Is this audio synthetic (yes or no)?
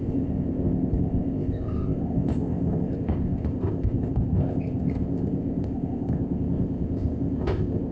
yes